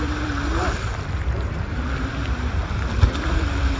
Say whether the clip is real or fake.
fake